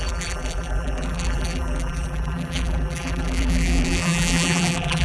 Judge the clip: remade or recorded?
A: remade